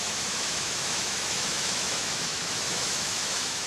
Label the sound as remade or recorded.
remade